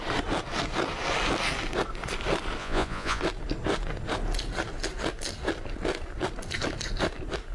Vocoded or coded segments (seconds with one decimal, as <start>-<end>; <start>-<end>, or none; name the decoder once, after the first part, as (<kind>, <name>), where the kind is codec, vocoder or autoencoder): 2.6-3.2 (vocoder, Vocos)